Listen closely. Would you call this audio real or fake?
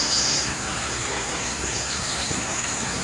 fake